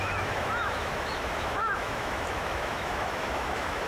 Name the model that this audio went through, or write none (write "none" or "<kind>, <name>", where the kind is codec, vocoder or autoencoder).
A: autoencoder, DAC-VAE